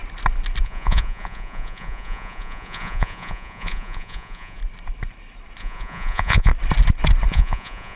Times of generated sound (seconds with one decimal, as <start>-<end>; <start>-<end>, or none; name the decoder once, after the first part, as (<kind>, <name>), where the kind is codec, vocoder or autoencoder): 0.6-4.6 (vocoder, Vocos); 5.6-6.5; 7.3-8.0